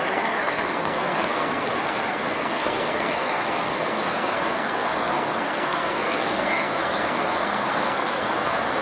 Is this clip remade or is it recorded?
remade